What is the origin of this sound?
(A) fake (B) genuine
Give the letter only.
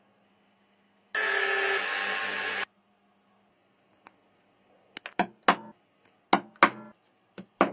B